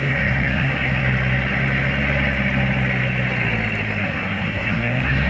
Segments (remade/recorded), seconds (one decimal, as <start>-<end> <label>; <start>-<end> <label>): 0.0-1.0 remade; 1.0-4.0 recorded; 4.0-5.3 remade